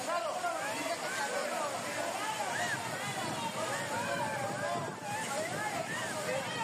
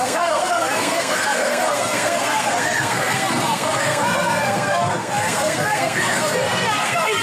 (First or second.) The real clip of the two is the first